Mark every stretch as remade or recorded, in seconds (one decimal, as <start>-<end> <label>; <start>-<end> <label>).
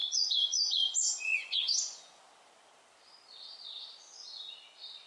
0.0-2.2 remade; 2.2-5.1 recorded